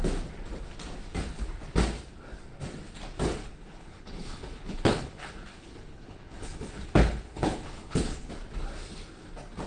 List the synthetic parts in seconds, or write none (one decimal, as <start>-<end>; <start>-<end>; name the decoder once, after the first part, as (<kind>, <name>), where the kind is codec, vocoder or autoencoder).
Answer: 3.4-8.3 (codec, HILCodec)